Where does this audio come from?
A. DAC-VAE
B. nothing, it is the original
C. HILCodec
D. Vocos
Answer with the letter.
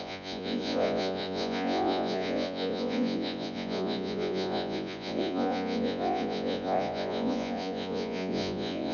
D